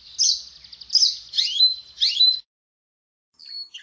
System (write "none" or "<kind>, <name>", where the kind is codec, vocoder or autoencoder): none